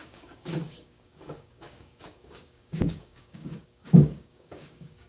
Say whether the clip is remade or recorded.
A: remade